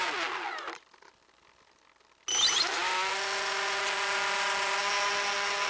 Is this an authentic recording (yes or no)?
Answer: yes